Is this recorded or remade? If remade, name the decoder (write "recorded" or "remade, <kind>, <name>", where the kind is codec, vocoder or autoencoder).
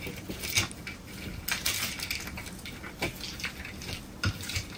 recorded